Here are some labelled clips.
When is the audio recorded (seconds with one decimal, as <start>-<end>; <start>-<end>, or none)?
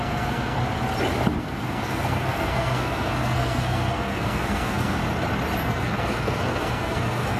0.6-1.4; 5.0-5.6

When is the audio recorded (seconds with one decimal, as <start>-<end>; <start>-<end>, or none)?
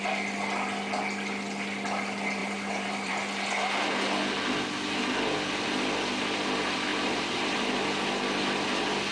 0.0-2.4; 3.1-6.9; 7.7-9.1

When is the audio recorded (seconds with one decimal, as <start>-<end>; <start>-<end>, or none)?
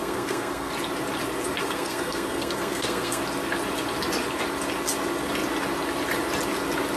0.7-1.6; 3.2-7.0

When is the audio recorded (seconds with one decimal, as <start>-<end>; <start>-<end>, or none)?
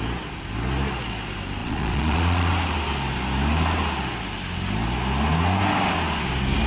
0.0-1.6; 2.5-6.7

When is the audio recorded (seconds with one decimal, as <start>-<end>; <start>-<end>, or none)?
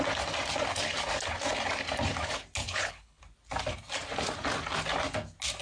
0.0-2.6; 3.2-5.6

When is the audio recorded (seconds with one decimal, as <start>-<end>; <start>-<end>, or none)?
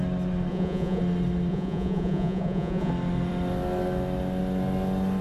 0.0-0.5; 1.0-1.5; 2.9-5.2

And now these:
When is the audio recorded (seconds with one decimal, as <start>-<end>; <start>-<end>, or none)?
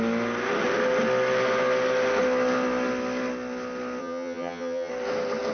0.0-4.0; 4.9-5.5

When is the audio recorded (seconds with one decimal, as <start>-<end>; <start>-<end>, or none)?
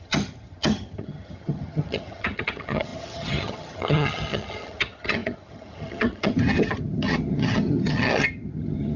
none